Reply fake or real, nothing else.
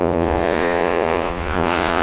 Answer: fake